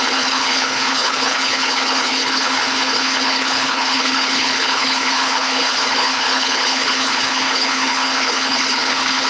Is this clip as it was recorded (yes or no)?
no